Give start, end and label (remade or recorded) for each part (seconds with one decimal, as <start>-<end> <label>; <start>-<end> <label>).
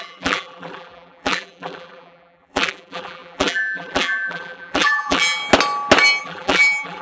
0.0-5.4 remade; 5.4-6.2 recorded; 6.2-7.0 remade